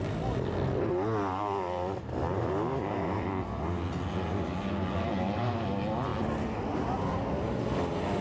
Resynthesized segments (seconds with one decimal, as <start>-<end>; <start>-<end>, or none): none